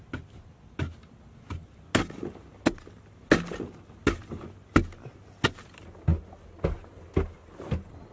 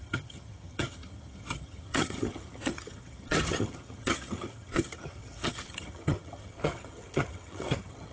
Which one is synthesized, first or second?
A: second